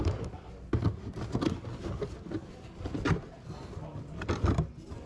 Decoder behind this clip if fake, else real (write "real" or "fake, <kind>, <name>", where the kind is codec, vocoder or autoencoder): real